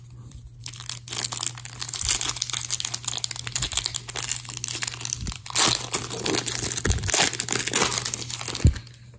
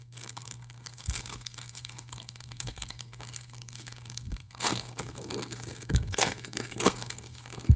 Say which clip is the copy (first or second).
second